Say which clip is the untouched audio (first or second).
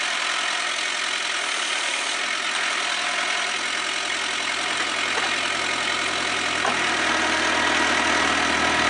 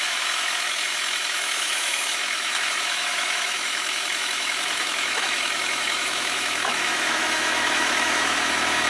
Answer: first